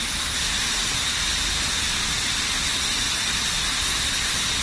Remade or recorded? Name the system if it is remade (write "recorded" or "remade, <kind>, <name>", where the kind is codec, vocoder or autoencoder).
recorded